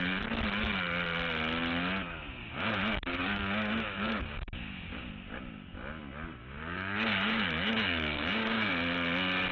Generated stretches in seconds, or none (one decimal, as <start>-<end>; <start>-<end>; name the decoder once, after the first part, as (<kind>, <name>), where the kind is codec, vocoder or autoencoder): 2.4-5.1 (codec, DAC); 6.4-8.7